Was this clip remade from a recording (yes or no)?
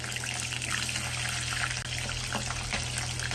no